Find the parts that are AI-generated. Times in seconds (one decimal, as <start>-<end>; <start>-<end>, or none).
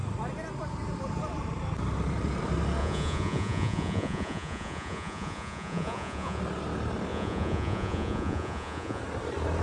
2.8-6.4; 7.1-9.0